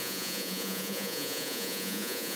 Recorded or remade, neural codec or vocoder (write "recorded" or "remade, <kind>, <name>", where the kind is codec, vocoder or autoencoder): remade, vocoder, Vocos